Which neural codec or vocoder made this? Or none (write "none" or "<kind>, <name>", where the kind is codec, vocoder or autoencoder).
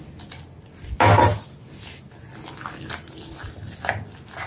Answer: none